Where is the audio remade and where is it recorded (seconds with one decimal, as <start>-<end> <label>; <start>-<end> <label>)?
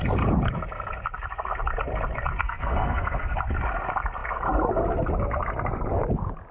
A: 0.0-2.4 recorded; 2.4-3.4 remade; 3.4-6.5 recorded